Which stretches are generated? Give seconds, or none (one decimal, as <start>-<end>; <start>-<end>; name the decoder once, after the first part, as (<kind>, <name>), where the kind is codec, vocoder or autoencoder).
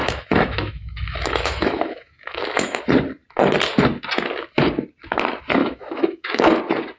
0.0-2.8 (autoencoder, DAC-VAE); 5.6-6.6